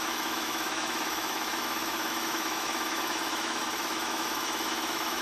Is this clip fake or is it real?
fake